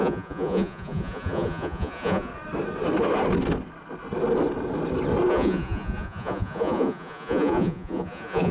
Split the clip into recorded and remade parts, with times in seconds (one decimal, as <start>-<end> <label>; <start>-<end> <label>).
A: 0.0-2.3 remade; 2.3-5.3 recorded; 5.3-8.5 remade